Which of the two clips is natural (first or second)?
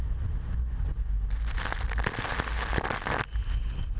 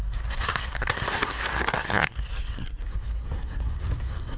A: first